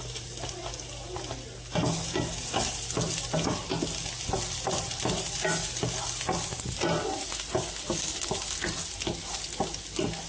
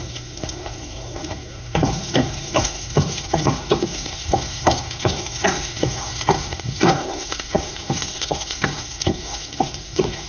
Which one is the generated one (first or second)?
second